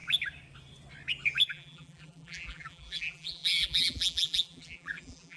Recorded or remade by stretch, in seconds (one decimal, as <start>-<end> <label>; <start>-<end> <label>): 0.0-1.5 recorded; 1.5-5.4 remade